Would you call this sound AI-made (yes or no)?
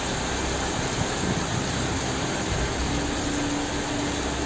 no